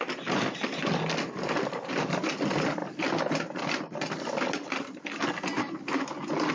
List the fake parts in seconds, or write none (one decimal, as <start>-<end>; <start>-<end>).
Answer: none